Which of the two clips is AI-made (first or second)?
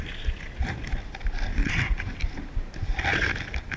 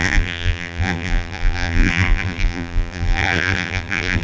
second